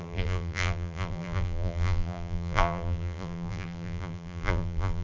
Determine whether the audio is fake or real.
fake